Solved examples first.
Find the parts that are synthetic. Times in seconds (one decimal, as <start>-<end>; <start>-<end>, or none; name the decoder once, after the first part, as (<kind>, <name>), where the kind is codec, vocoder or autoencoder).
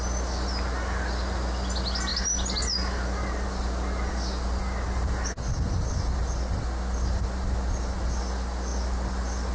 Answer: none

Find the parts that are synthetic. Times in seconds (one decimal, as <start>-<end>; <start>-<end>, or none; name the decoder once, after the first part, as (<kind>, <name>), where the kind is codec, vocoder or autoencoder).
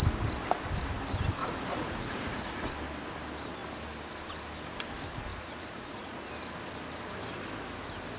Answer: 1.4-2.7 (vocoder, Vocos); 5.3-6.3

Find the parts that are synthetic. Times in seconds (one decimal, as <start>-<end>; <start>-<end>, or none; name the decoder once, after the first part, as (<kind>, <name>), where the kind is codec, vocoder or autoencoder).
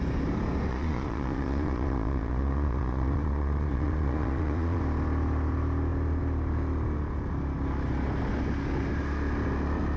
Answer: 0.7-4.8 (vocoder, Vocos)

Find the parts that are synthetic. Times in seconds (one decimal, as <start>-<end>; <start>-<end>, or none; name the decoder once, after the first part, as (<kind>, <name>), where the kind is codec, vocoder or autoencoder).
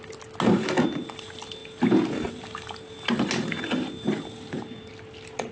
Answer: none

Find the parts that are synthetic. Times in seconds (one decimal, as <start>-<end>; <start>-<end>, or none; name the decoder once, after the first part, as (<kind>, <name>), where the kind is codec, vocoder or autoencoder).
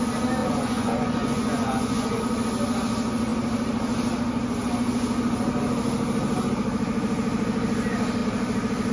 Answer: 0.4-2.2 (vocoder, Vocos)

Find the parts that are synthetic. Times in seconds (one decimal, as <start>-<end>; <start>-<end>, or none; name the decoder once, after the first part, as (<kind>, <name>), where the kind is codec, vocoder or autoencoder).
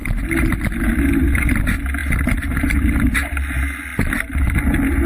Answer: none